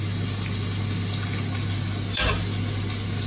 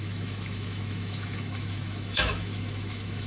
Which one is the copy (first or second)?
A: second